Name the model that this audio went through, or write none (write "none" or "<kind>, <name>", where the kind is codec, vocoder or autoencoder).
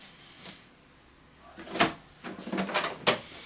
none